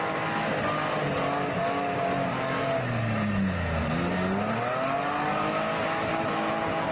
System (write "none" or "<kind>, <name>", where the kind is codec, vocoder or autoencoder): none